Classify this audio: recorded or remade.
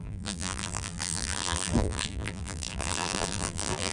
remade